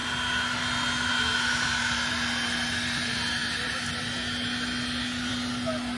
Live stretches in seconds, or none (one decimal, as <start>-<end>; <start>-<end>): 0.0-6.0